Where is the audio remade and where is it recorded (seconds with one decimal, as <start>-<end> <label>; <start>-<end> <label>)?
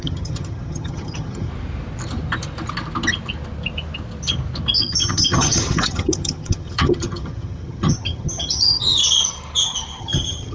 0.0-1.5 remade; 1.5-4.8 recorded; 4.8-9.0 remade; 9.0-10.0 recorded; 10.0-10.5 remade